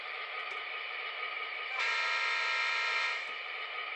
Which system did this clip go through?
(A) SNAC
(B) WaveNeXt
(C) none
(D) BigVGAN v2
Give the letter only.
D